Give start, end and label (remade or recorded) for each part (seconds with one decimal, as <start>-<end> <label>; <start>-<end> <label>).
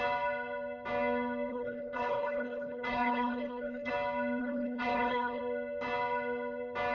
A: 0.0-1.5 recorded; 1.5-3.9 remade; 3.9-4.4 recorded; 4.4-5.4 remade; 5.4-6.9 recorded